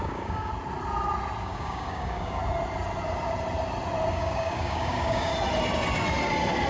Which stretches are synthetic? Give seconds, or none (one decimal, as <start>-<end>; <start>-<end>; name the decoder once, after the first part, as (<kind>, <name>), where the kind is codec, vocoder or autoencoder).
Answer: 0.0-0.5 (codec, DAC); 1.4-2.4; 4.1-5.3